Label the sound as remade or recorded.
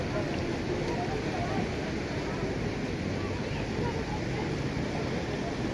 recorded